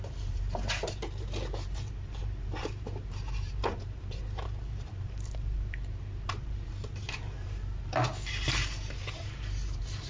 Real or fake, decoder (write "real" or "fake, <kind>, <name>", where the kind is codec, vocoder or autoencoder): fake, vocoder, BigVGAN v2